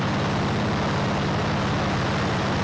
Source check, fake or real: real